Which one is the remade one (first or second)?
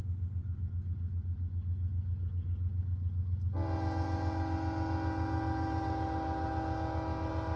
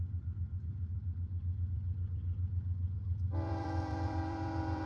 second